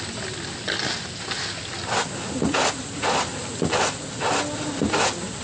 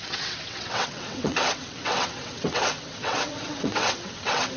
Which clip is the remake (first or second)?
second